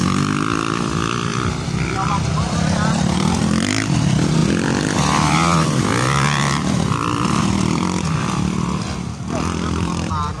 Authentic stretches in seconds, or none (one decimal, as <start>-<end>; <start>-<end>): 0.0-1.3; 3.4-10.4